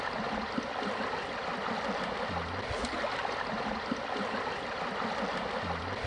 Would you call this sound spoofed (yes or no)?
no